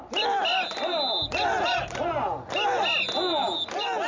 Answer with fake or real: real